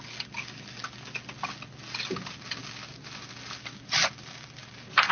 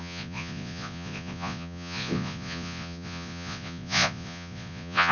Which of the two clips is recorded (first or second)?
first